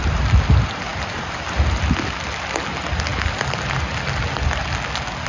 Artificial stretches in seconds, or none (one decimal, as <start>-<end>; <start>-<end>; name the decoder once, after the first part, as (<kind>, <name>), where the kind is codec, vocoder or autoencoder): none